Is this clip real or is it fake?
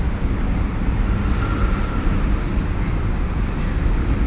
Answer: real